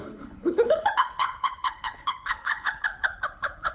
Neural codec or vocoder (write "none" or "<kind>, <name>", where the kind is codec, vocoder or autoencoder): codec, HILCodec